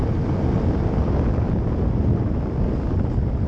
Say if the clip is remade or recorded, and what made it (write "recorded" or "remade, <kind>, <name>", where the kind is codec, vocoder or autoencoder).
recorded